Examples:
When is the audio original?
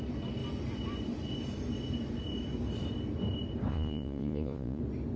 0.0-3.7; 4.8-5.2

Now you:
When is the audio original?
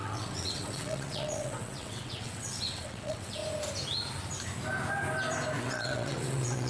3.4-5.6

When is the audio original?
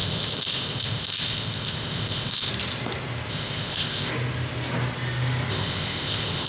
2.5-3.3; 4.1-5.5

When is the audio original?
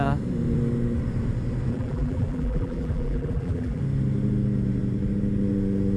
0.0-1.7; 3.8-6.0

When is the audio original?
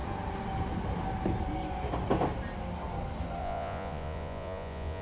0.0-3.4